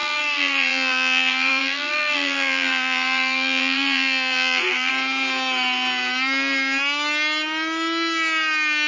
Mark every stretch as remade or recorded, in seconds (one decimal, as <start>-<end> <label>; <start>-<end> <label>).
0.0-4.9 remade; 4.9-8.9 recorded